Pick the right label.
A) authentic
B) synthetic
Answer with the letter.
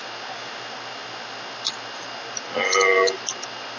A